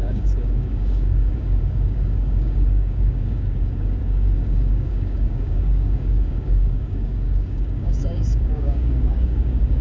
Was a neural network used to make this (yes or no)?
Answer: yes